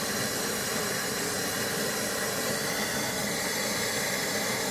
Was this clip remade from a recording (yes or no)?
no